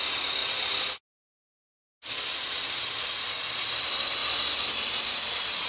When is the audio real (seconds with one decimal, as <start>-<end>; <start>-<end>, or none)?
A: 0.0-5.7

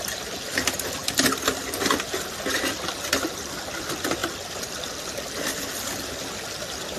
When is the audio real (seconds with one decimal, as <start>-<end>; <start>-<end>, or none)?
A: 0.0-4.2; 4.9-7.0

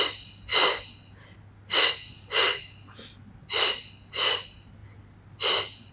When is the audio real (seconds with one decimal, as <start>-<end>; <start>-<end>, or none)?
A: 0.0-5.9

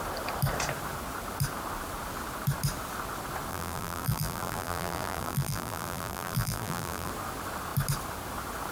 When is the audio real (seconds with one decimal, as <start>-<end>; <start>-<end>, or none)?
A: 0.0-3.5; 7.1-8.7